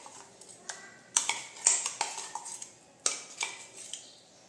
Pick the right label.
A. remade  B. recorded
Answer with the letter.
B